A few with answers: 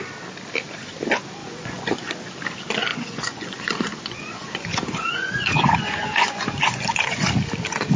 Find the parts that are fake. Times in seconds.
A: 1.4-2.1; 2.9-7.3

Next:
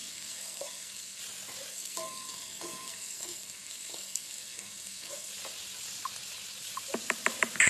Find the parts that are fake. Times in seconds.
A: 0.0-1.2; 1.7-5.3

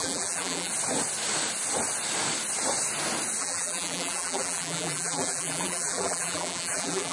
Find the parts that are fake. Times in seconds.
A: 0.0-0.7; 3.4-7.1

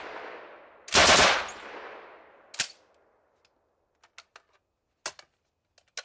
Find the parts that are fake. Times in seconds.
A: none

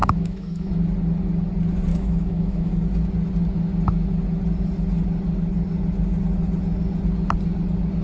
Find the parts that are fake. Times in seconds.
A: 0.0-0.7; 1.9-2.7